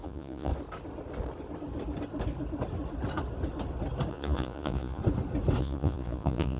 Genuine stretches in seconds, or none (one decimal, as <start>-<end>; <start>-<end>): 0.5-4.1; 5.0-5.6